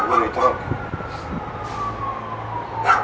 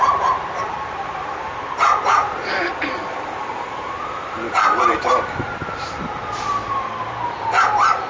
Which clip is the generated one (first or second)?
second